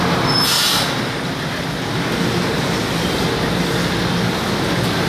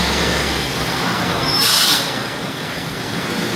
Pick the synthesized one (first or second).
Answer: second